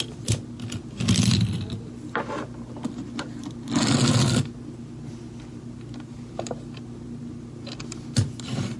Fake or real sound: real